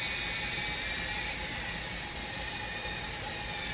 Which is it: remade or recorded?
recorded